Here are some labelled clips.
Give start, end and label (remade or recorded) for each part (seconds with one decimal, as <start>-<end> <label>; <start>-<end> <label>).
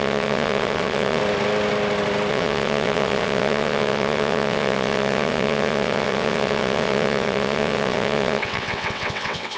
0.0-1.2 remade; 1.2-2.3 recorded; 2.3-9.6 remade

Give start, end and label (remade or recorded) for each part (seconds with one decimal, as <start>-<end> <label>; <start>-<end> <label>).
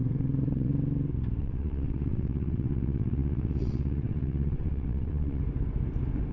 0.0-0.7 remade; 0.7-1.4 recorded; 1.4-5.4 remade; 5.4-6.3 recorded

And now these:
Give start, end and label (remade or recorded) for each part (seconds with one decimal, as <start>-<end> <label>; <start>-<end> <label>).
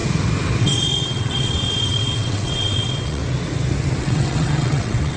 0.0-0.6 recorded; 0.6-3.2 remade; 3.2-4.0 recorded; 4.0-5.2 remade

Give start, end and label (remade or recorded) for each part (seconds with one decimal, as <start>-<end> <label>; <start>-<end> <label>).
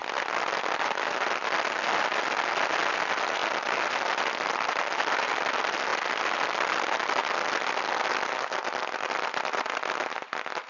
0.0-10.7 recorded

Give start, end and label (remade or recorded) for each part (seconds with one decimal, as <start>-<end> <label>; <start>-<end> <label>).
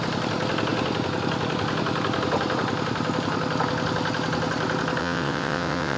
0.0-5.0 recorded; 5.0-6.0 remade